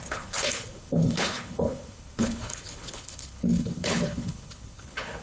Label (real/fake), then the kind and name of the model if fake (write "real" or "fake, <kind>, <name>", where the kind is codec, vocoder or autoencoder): fake, codec, HILCodec